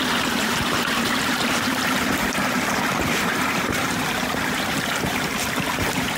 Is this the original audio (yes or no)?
no